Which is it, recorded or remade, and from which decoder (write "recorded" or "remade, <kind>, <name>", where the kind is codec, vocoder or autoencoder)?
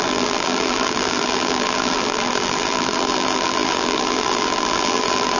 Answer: remade, vocoder, BigVGAN v2